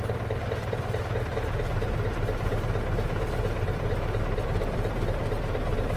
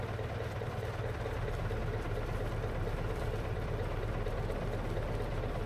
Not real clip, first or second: first